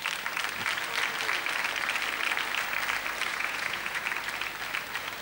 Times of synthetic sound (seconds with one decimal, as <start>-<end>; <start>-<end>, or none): 3.3-4.0